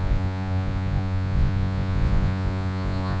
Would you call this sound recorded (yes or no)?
no